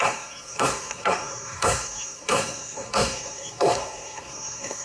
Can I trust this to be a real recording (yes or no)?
no